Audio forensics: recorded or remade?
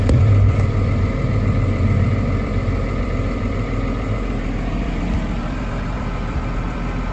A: remade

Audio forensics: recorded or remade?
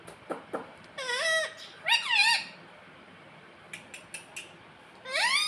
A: recorded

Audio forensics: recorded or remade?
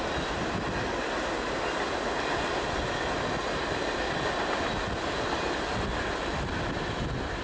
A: recorded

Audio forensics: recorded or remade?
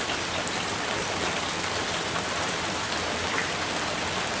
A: recorded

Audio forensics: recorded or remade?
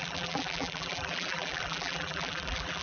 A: remade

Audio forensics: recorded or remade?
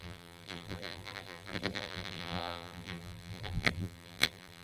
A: remade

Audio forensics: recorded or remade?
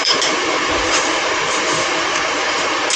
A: remade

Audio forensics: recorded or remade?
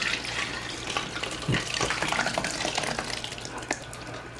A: recorded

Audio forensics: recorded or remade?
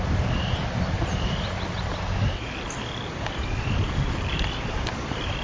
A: remade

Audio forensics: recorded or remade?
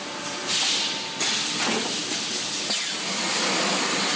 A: recorded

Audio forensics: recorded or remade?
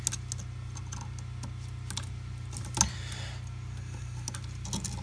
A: recorded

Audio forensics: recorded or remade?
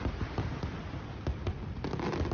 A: remade